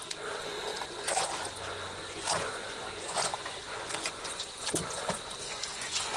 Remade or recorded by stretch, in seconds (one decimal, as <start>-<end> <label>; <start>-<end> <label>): 0.0-6.2 remade